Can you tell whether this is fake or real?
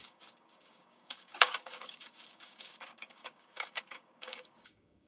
fake